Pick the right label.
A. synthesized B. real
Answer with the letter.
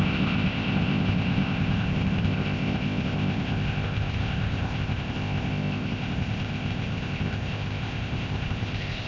A